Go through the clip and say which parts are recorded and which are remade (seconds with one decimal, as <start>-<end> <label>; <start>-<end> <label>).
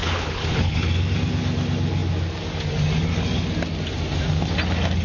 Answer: 0.0-0.8 remade; 0.8-5.0 recorded